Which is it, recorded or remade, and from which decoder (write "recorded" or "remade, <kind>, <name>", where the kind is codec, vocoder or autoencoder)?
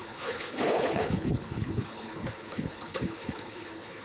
remade, codec, HILCodec